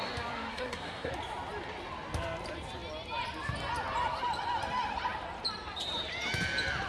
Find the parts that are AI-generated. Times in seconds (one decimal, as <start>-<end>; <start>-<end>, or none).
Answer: 0.5-1.1